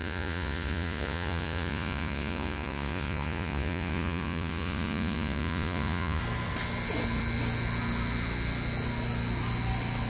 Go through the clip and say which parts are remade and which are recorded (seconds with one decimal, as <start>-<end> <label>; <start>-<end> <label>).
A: 0.0-6.2 remade; 6.2-10.1 recorded